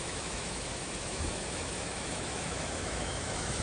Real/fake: fake